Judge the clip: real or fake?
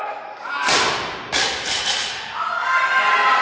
real